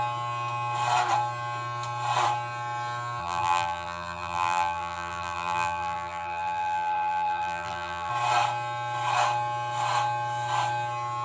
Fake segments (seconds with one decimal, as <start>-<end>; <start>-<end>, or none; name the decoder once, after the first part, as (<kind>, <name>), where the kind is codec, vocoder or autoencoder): 3.2-8.1 (vocoder, BigVGAN v2)